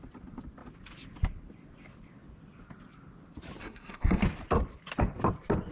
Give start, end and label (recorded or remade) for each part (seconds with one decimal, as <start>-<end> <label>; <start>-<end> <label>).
0.0-3.6 recorded; 3.6-4.2 remade; 4.2-5.7 recorded